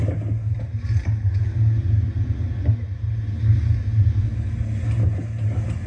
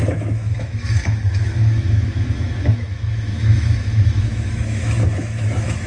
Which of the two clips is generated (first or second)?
second